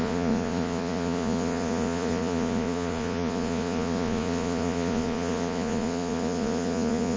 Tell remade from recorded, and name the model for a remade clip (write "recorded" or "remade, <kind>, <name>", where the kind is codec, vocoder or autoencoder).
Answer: remade, vocoder, Vocos